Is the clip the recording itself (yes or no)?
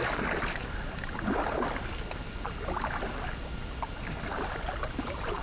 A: yes